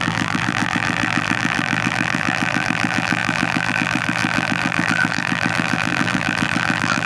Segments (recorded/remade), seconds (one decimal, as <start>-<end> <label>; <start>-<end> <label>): 0.0-7.1 remade